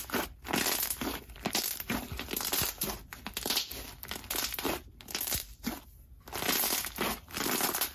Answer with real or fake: real